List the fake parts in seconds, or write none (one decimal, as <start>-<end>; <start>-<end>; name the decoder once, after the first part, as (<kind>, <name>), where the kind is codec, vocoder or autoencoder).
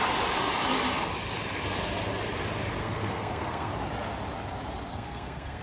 2.8-3.7 (codec, SNAC); 4.9-5.6